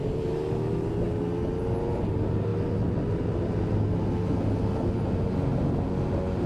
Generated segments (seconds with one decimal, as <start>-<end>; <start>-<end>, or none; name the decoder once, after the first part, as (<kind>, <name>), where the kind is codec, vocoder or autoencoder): none